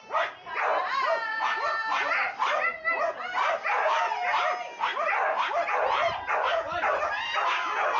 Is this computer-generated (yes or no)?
no